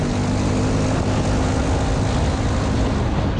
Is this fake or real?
real